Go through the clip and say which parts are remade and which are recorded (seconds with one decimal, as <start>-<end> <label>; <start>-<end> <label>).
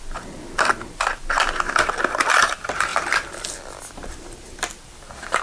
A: 0.0-5.4 recorded